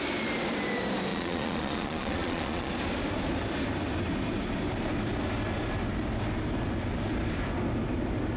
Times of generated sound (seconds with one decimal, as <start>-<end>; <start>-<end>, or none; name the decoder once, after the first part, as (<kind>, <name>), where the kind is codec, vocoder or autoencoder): 1.1-2.7 (vocoder, Vocos)